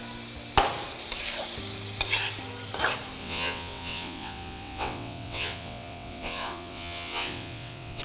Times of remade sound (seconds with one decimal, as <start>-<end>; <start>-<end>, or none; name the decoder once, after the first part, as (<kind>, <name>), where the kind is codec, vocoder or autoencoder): 3.2-8.0 (vocoder, WaveNeXt)